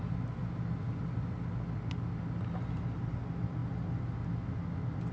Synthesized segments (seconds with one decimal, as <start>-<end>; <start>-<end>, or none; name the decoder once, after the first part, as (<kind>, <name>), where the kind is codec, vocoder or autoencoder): none